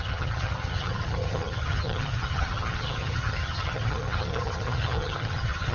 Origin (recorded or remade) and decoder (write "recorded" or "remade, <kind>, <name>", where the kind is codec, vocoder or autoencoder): remade, vocoder, HiFi-GAN